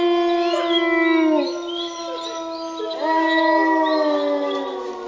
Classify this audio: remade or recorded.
recorded